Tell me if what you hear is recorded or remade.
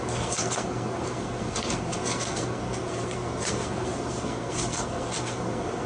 remade